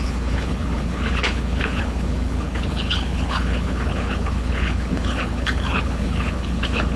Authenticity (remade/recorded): remade